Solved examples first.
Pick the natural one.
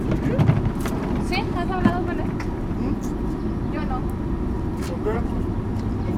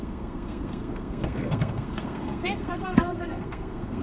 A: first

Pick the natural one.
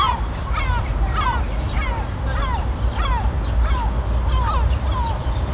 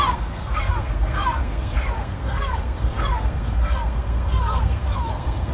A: first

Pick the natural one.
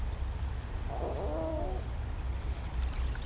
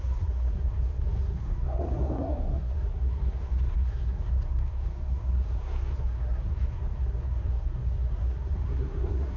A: first